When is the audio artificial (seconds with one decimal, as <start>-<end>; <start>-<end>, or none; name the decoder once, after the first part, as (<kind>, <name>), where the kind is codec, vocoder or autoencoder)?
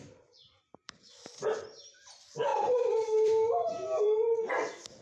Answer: 0.0-5.0 (vocoder, BigVGAN v2)